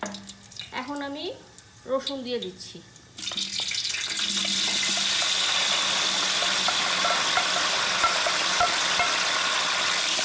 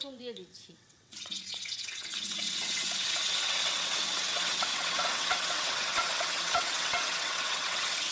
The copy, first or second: second